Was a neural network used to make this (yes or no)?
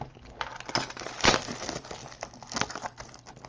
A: no